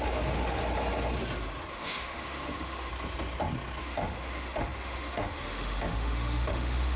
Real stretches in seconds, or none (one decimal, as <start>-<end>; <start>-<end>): 0.6-1.7; 2.9-3.8

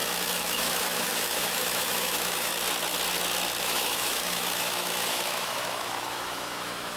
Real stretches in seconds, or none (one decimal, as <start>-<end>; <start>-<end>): 2.5-3.6